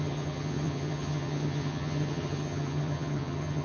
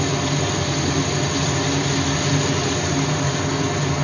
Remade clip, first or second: first